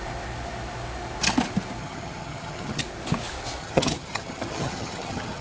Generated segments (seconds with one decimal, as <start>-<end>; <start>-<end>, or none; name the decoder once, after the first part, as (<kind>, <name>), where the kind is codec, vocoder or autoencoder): 1.8-2.8 (vocoder, HiFi-GAN); 3.6-5.4